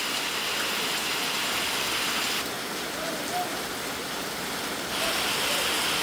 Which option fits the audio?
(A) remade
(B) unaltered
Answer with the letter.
B